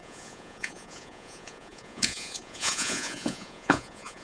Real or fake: fake